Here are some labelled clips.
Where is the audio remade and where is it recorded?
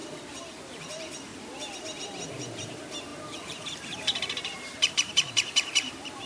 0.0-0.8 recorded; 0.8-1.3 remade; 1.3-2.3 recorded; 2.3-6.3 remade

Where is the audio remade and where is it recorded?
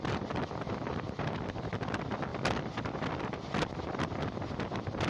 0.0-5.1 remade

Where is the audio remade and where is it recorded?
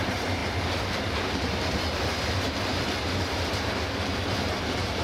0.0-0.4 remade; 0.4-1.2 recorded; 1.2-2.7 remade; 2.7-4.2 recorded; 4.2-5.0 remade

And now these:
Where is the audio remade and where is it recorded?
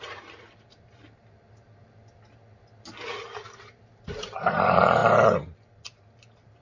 0.0-1.8 remade; 1.8-3.2 recorded; 3.2-6.6 remade